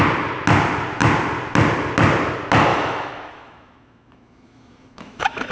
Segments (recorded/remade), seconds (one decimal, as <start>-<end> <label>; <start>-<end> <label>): 0.0-2.7 recorded; 2.7-5.5 remade